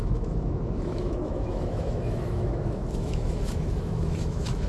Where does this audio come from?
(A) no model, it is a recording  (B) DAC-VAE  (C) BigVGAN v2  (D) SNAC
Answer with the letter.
B